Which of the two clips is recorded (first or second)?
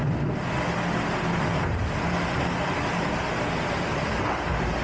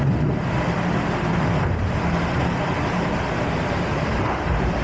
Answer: first